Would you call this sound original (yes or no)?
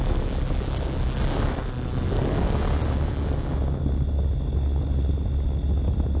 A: yes